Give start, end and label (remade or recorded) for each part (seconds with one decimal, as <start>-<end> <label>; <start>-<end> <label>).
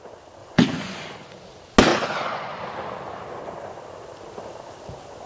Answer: 0.0-0.4 recorded; 0.4-1.3 remade; 1.3-1.9 recorded; 1.9-2.6 remade; 2.6-5.3 recorded